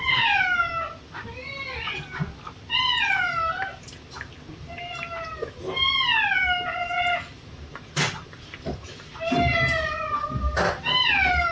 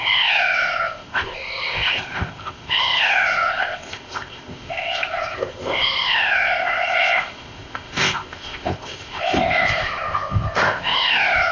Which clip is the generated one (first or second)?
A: second